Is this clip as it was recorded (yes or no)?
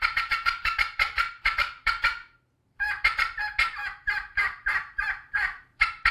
no